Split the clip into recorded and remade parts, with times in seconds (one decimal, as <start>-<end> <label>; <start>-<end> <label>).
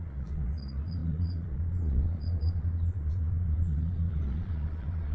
0.0-5.1 remade